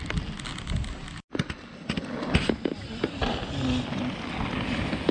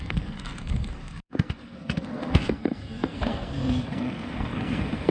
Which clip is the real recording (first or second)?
first